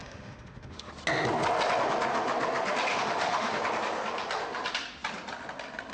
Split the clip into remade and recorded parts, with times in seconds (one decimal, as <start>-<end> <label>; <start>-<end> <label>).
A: 0.0-0.9 remade; 0.9-2.9 recorded; 2.9-3.6 remade; 3.6-5.9 recorded